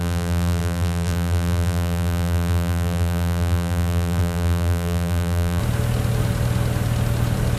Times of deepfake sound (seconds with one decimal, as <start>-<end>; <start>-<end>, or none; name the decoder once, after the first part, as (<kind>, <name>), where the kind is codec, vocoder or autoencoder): 0.0-5.6 (vocoder, BigVGAN v2)